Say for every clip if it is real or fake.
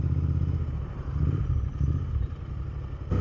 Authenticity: real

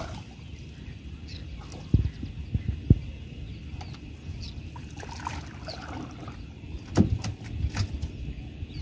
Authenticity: real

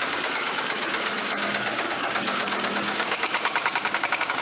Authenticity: fake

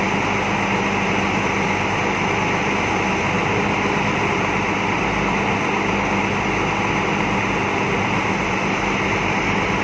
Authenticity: real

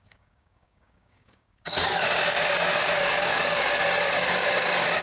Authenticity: fake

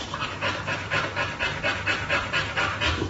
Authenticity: real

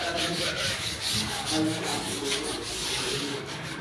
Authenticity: fake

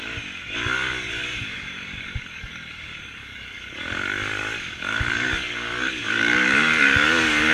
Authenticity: fake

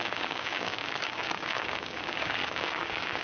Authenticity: fake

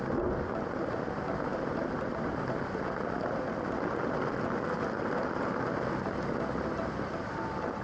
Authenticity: real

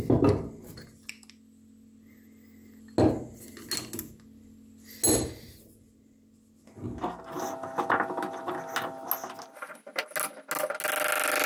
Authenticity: real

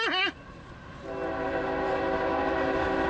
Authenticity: real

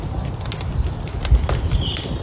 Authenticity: real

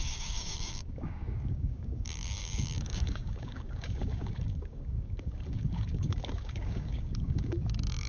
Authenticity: fake